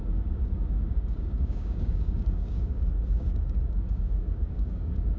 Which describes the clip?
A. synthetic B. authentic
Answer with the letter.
A